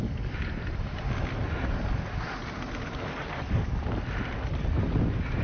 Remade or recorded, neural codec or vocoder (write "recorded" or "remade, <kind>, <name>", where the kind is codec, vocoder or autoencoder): recorded